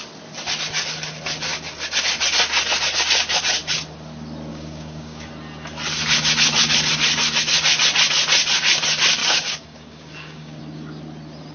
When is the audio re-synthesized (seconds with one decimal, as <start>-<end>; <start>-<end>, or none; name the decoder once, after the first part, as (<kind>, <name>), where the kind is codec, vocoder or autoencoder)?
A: 4.5-5.3 (codec, DAC); 9.2-10.6